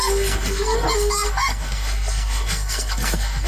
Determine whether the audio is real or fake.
fake